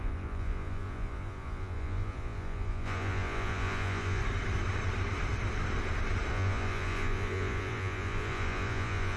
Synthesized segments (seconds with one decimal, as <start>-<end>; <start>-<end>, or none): 0.0-4.2; 6.3-9.2